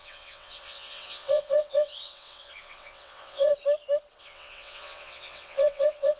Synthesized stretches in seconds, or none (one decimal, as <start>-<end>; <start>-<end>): 0.0-3.5; 4.2-6.2